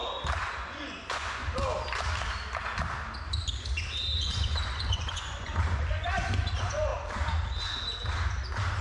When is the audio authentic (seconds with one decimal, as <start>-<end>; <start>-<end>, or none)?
0.0-0.5; 1.4-4.2; 6.9-8.8